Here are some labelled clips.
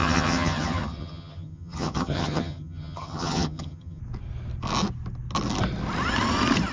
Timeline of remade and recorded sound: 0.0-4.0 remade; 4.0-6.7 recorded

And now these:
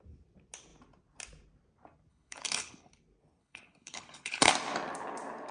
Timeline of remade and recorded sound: 0.0-2.1 recorded; 2.1-2.9 remade; 2.9-3.4 recorded; 3.4-4.5 remade; 4.5-5.5 recorded

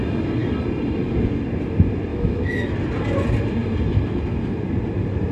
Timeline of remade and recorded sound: 0.0-2.1 recorded; 2.1-2.7 remade; 2.7-5.3 recorded